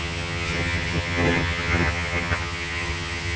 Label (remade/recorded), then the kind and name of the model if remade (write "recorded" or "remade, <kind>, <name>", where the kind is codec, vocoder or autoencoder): remade, vocoder, HiFi-GAN